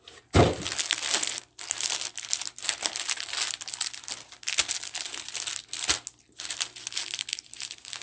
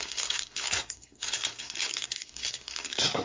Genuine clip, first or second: first